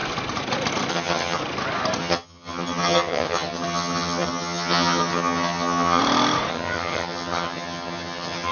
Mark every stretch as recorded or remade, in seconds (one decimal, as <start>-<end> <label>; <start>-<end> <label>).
0.0-0.9 recorded; 0.9-1.4 remade; 1.4-2.0 recorded; 2.0-6.0 remade; 6.0-6.5 recorded; 6.5-8.5 remade